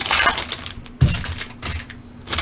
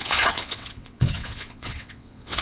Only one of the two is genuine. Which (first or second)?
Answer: first